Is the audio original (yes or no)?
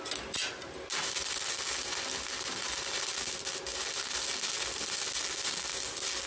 yes